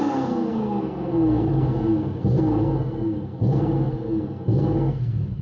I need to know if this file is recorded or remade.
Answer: remade